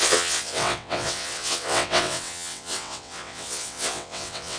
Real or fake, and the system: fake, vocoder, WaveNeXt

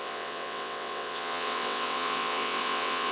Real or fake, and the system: fake, vocoder, WaveNeXt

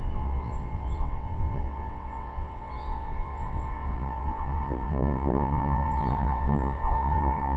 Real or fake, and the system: fake, vocoder, WaveNeXt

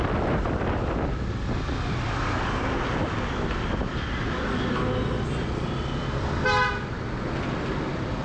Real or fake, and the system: real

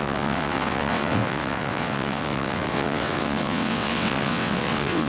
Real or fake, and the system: fake, vocoder, WaveNeXt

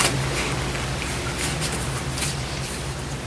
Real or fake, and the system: real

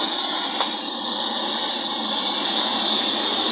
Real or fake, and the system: real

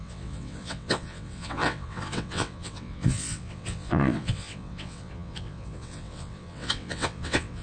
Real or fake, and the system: fake, vocoder, WaveNeXt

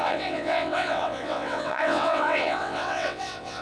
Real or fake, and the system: fake, vocoder, WaveNeXt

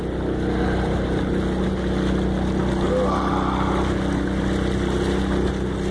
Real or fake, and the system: real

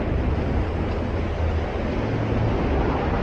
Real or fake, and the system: real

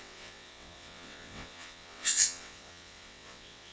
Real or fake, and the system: fake, vocoder, WaveNeXt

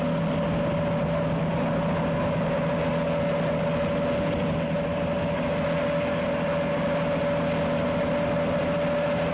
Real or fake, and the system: real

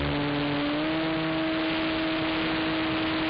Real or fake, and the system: real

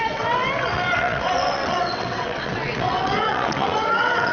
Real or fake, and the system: fake, vocoder, WaveNeXt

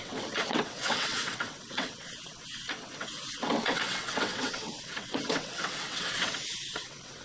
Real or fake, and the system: fake, vocoder, WaveNeXt